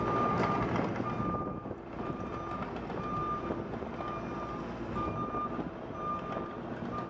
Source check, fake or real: real